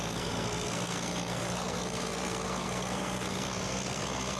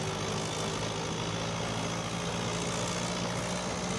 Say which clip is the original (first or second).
second